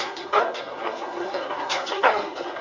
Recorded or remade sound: remade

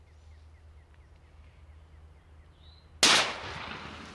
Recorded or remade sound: recorded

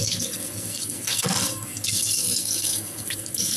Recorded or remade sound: remade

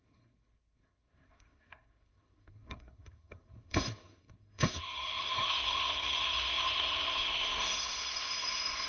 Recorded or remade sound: remade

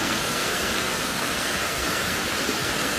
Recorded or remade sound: remade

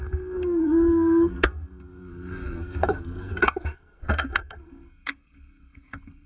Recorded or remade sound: remade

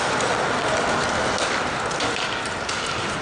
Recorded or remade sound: recorded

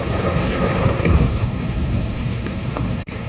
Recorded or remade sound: remade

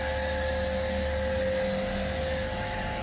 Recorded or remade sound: recorded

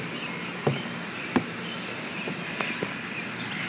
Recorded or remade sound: recorded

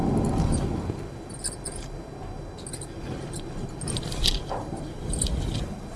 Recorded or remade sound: recorded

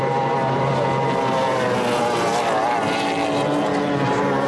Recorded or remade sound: recorded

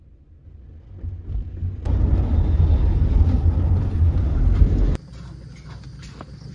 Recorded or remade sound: recorded